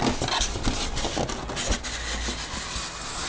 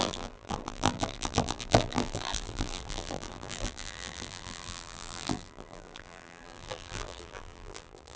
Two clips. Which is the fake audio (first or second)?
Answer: second